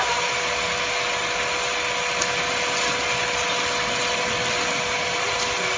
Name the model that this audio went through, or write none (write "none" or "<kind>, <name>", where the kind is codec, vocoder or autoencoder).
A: none